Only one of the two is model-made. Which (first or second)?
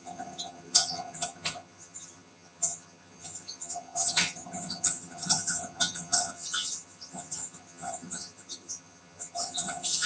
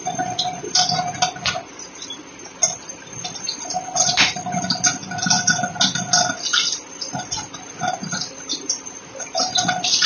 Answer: first